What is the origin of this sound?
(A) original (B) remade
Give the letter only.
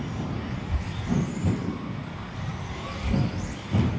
A